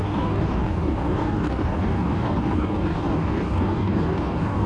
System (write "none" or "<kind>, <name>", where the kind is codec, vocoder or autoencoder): codec, DAC